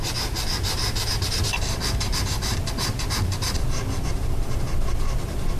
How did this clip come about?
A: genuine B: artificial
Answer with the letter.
B